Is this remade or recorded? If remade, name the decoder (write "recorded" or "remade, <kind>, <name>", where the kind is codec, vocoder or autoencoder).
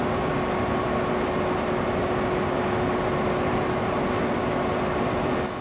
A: recorded